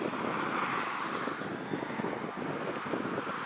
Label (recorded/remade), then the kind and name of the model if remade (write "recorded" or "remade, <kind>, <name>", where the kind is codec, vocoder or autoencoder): recorded